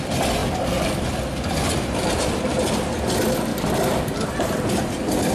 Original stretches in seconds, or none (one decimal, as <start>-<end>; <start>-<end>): 0.0-5.3